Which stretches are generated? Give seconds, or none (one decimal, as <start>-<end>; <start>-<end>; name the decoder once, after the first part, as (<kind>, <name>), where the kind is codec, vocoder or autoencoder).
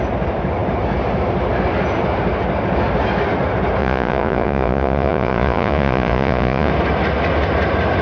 3.8-6.7 (vocoder, Vocos)